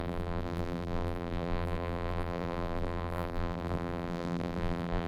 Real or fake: fake